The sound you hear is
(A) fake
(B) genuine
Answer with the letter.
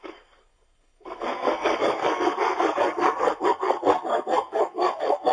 A